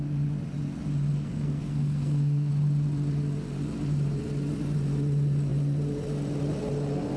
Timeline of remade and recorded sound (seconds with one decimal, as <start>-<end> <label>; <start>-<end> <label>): 0.0-1.1 recorded; 1.1-2.5 remade; 2.5-7.2 recorded